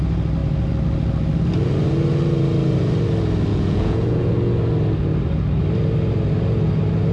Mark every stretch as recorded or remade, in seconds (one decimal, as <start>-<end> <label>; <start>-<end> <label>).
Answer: 0.0-3.5 recorded; 3.5-4.3 remade; 4.3-7.1 recorded